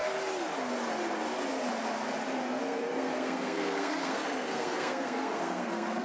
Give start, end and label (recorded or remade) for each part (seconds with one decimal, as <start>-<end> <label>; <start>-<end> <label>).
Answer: 0.0-2.6 recorded; 2.6-6.0 remade